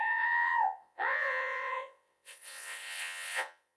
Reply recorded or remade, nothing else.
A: remade